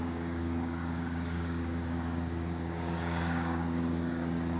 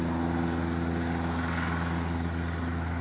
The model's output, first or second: first